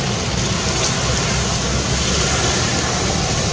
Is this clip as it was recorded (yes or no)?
yes